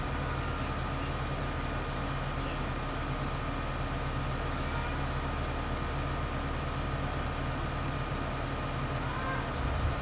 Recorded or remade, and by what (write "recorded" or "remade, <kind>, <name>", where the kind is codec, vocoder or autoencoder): recorded